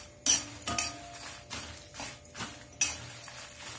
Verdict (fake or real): real